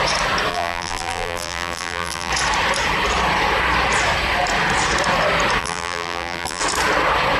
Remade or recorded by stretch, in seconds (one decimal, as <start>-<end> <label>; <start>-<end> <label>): 0.0-0.5 recorded; 0.5-2.3 remade; 2.3-5.6 recorded; 5.6-6.6 remade; 6.6-7.4 recorded